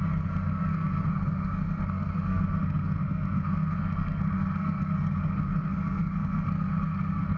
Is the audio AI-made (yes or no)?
yes